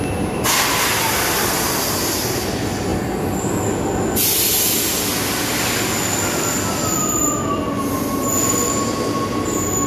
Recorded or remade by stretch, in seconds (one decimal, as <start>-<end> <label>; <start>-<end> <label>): 0.0-9.9 recorded